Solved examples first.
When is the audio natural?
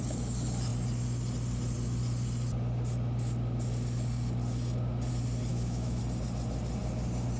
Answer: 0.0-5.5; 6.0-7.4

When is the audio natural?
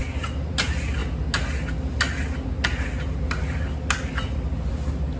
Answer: 0.0-5.2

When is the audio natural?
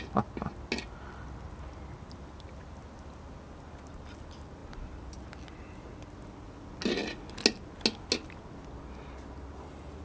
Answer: 0.0-10.0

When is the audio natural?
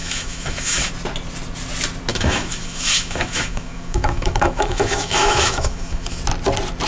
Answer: 0.9-2.1; 6.2-6.9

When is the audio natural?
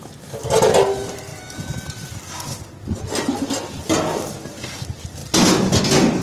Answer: 0.0-6.2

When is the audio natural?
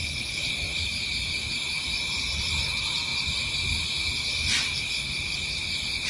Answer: 0.0-6.1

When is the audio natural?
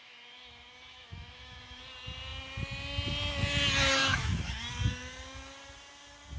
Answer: 1.8-4.0; 4.5-6.4